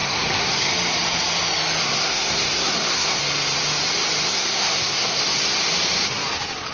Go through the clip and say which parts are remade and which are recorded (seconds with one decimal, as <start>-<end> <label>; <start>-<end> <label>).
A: 0.0-0.7 remade; 0.7-1.8 recorded; 1.8-3.2 remade; 3.2-4.3 recorded; 4.3-5.2 remade; 5.2-6.7 recorded